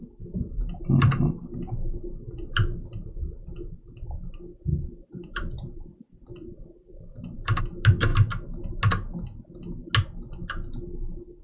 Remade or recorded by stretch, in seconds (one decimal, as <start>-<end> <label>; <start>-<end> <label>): 0.0-4.7 recorded; 4.7-7.6 remade; 7.6-11.4 recorded

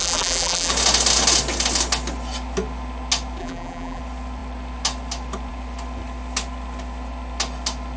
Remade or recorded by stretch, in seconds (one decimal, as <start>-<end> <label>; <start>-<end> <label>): 0.0-0.7 remade; 0.7-3.4 recorded; 3.4-4.0 remade; 4.0-8.0 recorded

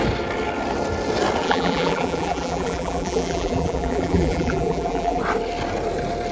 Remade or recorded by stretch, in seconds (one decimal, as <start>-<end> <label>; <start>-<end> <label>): 0.0-1.4 recorded; 1.4-5.2 remade; 5.2-6.3 recorded

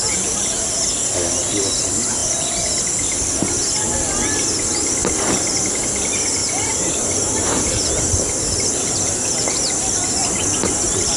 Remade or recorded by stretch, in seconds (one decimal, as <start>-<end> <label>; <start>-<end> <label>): 0.0-5.0 recorded; 5.0-5.7 remade; 5.7-6.4 recorded; 6.4-11.2 remade